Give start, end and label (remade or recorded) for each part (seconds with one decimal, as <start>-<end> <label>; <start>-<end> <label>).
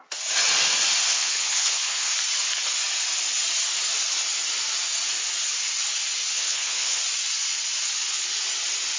0.0-1.1 recorded; 1.1-2.1 remade; 2.1-6.3 recorded; 6.3-7.0 remade; 7.0-9.0 recorded